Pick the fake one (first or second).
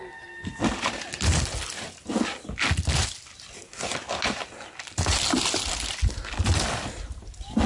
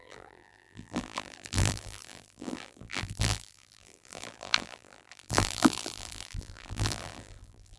second